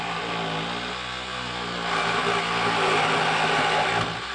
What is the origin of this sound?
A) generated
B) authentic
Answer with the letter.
B